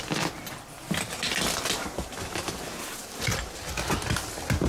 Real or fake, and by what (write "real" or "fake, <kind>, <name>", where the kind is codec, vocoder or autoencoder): real